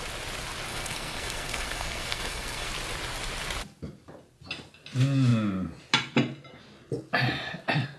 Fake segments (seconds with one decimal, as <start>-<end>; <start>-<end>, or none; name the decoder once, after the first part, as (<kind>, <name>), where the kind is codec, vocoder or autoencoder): 0.7-2.7 (codec, SNAC)